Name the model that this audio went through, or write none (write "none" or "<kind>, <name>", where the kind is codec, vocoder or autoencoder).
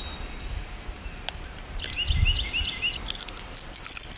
none